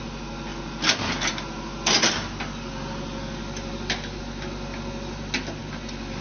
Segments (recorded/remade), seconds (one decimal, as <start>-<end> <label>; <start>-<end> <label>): 0.0-6.2 recorded